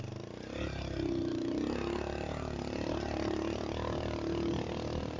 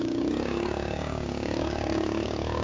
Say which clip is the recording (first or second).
first